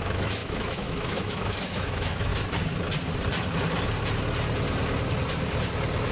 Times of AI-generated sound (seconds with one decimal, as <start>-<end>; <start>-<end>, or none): 0.0-2.3